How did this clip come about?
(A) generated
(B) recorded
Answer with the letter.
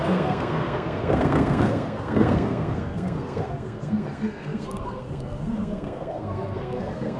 A